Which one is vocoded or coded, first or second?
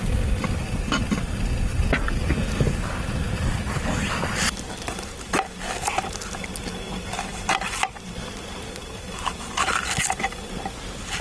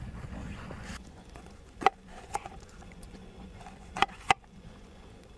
second